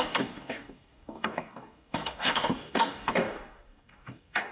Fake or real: fake